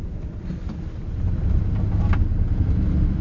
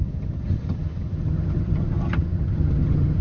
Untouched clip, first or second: first